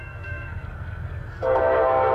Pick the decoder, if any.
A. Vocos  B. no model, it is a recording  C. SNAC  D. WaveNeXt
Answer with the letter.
C